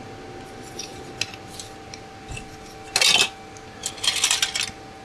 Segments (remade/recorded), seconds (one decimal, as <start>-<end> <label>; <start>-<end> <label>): 0.0-5.0 recorded